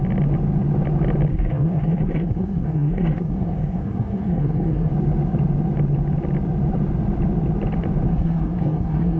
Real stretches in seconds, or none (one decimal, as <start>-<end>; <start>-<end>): 0.0-1.3; 4.9-8.1